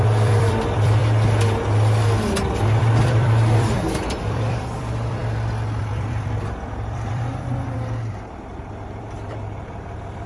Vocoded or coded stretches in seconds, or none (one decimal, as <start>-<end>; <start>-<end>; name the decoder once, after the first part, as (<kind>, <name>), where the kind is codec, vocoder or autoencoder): 0.0-1.0 (vocoder, BigVGAN v2); 2.8-10.3